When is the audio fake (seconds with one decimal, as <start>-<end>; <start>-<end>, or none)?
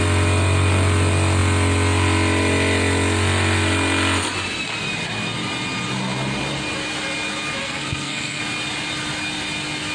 7.6-8.4